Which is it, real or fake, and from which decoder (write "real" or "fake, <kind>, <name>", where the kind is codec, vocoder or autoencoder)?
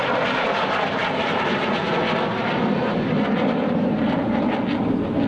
real